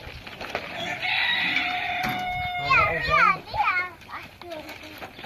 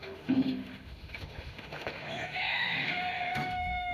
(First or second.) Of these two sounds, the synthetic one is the second